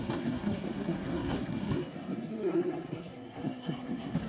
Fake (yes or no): yes